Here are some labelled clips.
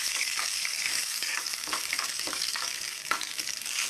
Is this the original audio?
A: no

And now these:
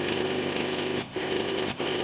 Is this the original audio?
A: no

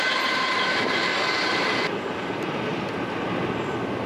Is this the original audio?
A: yes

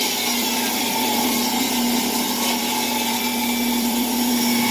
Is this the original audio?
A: no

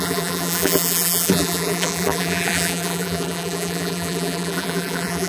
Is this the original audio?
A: no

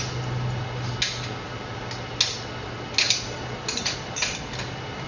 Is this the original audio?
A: yes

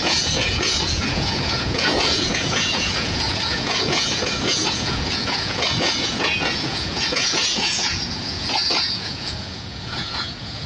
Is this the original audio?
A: no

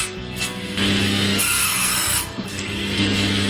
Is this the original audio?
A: no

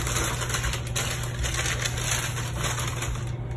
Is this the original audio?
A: yes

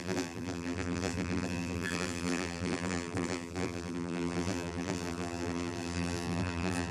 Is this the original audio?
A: no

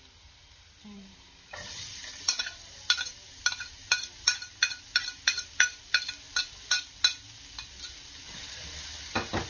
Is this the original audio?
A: yes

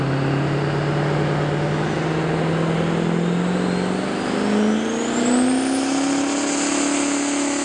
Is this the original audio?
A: yes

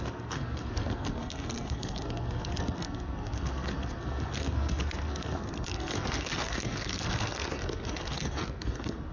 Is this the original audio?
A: no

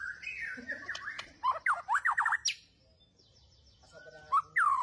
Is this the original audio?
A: yes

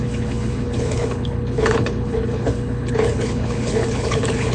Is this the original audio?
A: no